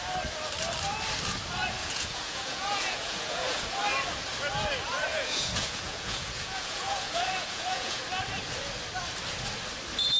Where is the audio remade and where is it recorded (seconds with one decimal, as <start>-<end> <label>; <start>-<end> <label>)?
0.0-1.8 recorded; 1.8-3.6 remade; 3.6-5.1 recorded; 5.1-8.0 remade; 8.0-10.2 recorded